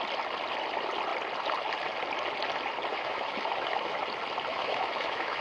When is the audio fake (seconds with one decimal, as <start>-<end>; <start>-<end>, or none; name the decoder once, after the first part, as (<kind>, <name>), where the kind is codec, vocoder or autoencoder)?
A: 2.9-4.0 (autoencoder, DAC-VAE); 4.5-5.4